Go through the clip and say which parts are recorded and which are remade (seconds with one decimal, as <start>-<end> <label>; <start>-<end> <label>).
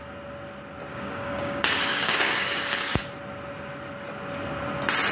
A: 0.0-0.9 recorded; 0.9-2.9 remade; 2.9-5.1 recorded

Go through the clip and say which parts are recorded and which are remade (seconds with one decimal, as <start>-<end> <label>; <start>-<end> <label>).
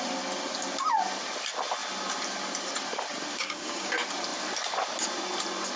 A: 0.0-3.3 recorded; 3.3-3.9 remade; 3.9-5.8 recorded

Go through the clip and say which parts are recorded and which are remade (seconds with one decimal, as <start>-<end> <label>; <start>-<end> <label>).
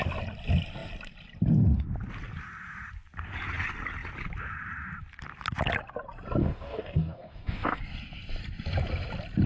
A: 0.0-6.4 recorded; 6.4-7.8 remade; 7.8-9.5 recorded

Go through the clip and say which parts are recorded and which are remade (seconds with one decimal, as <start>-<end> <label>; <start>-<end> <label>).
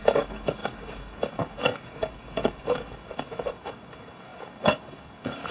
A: 0.0-5.5 remade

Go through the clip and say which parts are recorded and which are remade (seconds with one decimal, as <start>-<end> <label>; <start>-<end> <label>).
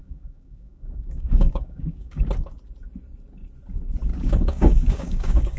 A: 0.0-2.2 remade; 2.2-4.1 recorded; 4.1-5.6 remade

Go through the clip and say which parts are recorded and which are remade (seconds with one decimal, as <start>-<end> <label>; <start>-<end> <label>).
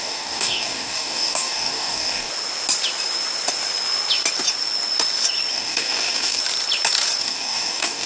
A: 0.0-2.3 remade; 2.3-5.5 recorded; 5.5-6.4 remade; 6.4-7.2 recorded; 7.2-8.1 remade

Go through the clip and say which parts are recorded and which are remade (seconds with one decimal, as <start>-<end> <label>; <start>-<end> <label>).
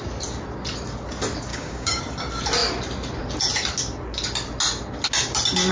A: 0.0-1.5 recorded; 1.5-2.0 remade; 2.0-5.7 recorded